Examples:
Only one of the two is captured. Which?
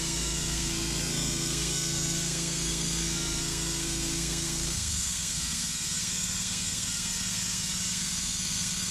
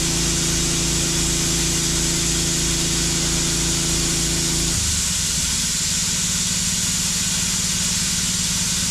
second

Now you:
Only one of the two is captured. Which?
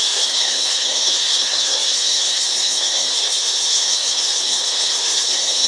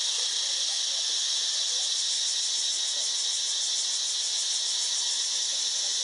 second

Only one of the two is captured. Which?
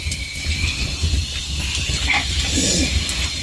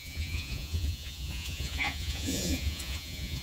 first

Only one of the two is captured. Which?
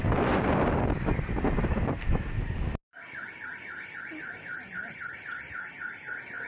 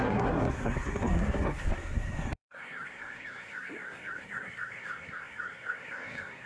first